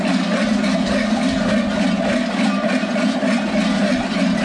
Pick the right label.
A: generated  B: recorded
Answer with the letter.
B